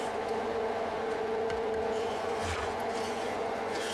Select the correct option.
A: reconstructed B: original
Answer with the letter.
A